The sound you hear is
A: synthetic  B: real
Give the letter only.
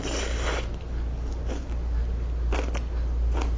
B